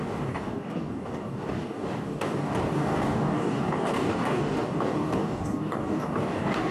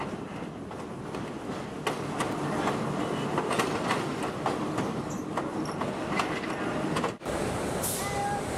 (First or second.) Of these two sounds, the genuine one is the second